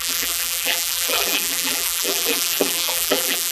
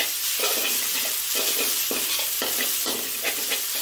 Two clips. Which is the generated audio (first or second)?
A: first